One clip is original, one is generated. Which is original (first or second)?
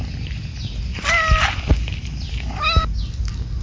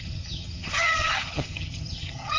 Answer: first